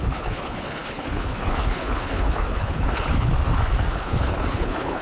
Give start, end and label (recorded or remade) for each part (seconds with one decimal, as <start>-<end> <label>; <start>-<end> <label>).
0.0-3.3 remade; 3.3-3.9 recorded; 3.9-5.0 remade